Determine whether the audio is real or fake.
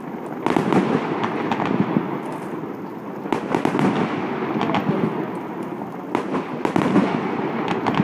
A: real